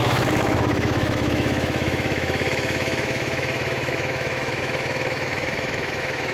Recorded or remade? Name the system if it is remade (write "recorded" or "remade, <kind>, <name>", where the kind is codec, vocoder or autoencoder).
remade, autoencoder, DAC-VAE